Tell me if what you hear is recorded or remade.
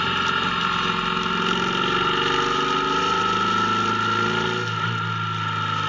recorded